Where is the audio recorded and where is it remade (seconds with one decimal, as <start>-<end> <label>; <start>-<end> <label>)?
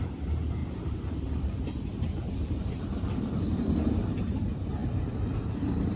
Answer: 0.0-6.0 remade